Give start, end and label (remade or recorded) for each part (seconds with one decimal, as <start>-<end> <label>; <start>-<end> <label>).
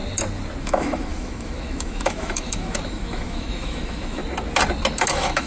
0.0-0.6 recorded; 0.6-4.2 remade; 4.2-5.1 recorded; 5.1-5.5 remade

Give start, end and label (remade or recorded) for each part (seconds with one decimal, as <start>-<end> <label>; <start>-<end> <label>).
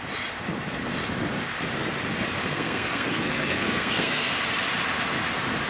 0.0-2.4 recorded; 2.4-4.3 remade; 4.3-5.7 recorded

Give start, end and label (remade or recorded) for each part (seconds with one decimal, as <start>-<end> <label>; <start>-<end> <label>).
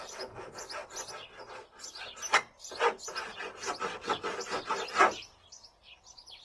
0.0-6.4 recorded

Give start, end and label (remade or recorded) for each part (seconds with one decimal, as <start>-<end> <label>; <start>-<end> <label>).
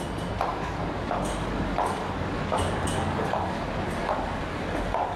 0.0-0.5 recorded; 0.5-3.6 remade; 3.6-4.0 recorded; 4.0-5.2 remade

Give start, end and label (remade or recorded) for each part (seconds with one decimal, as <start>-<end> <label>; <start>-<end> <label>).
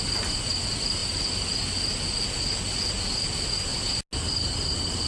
0.0-5.1 recorded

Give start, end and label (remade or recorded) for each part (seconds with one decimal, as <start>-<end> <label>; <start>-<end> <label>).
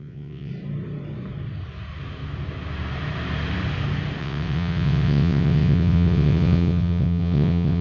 0.0-0.5 remade; 0.5-4.2 recorded; 4.2-7.8 remade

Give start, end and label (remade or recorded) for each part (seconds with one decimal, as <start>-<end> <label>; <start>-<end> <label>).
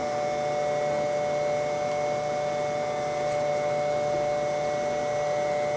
0.0-5.8 recorded